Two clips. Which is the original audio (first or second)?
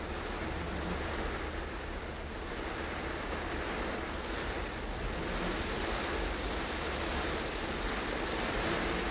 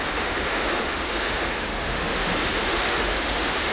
first